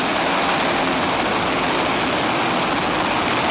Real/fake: real